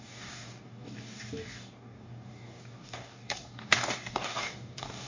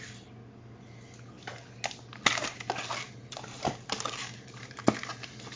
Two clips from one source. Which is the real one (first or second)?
second